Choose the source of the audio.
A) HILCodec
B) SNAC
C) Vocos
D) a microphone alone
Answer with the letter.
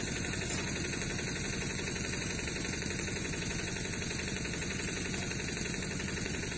C